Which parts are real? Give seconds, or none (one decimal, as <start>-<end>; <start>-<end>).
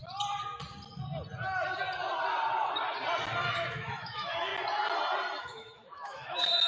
0.0-3.4; 4.5-5.4